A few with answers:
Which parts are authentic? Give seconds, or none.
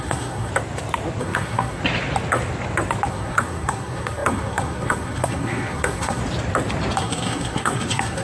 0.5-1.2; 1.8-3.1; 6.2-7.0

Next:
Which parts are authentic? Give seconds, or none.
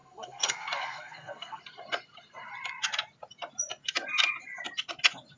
1.6-5.4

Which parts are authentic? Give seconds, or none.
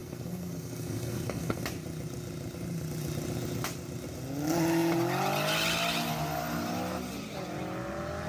1.6-8.3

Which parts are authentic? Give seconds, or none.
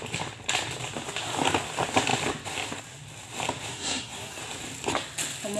0.0-3.7; 4.4-5.6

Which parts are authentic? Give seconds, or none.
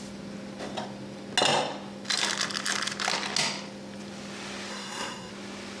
0.0-4.7; 5.3-5.8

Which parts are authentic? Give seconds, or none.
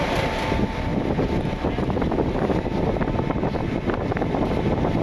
0.0-5.0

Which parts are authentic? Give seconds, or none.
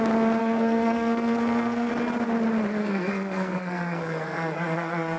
0.0-0.4; 1.9-2.8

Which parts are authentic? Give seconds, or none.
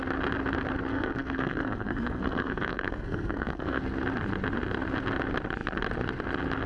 0.0-0.9; 3.8-6.7